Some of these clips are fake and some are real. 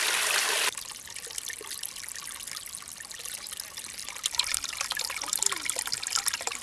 real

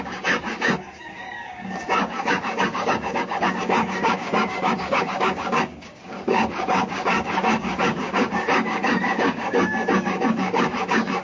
fake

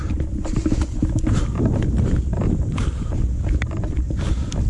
real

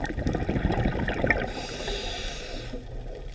real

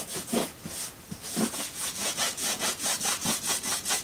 fake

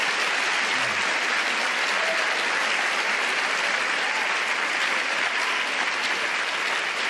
real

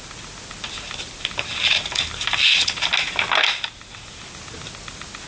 real